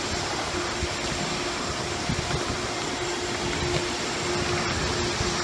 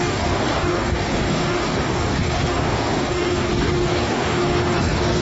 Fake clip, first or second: second